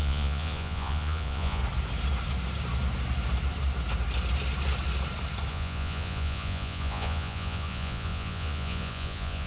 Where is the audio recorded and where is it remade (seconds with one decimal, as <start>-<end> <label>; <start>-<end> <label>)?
0.0-1.6 remade; 1.6-5.5 recorded; 5.5-9.5 remade